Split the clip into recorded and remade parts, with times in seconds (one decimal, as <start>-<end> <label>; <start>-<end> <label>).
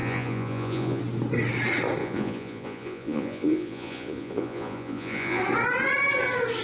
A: 0.0-1.0 remade; 1.0-2.0 recorded; 2.0-5.4 remade; 5.4-6.6 recorded